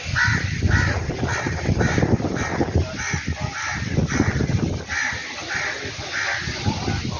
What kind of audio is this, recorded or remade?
recorded